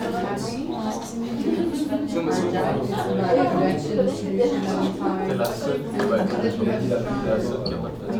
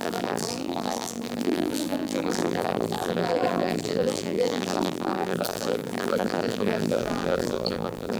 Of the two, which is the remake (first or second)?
second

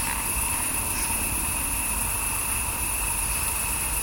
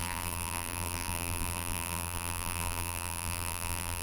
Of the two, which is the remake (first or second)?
second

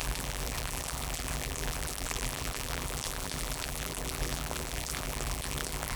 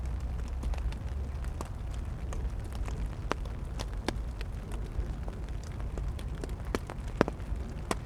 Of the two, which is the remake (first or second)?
first